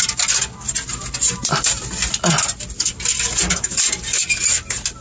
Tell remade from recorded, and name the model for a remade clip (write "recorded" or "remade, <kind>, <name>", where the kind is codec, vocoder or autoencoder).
recorded